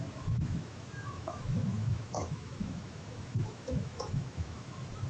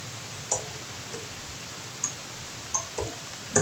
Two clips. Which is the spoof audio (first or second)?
first